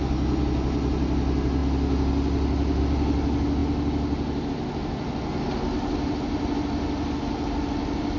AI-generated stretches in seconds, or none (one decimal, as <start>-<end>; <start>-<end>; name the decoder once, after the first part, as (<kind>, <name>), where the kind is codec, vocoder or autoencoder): none